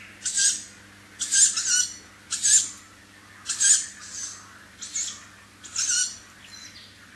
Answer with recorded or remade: recorded